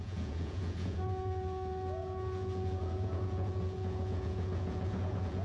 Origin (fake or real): fake